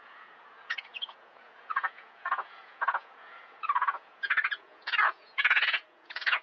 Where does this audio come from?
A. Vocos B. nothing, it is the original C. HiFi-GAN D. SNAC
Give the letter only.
A